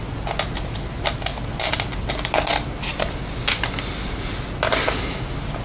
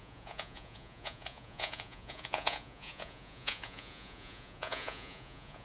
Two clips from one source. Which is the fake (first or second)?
second